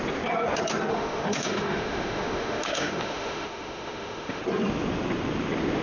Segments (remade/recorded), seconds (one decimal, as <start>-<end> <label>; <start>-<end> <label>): 0.0-0.9 recorded; 0.9-4.4 remade; 4.4-5.8 recorded